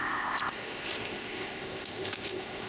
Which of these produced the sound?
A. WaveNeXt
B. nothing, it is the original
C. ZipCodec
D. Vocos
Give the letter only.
C